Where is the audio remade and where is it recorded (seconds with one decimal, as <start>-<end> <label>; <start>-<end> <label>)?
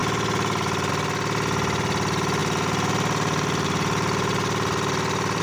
0.0-2.4 recorded; 2.4-5.4 remade